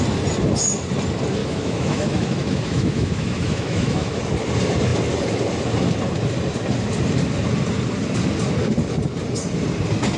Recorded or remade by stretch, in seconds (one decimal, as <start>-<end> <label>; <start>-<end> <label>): 0.0-1.4 recorded; 1.4-4.2 remade; 4.2-10.2 recorded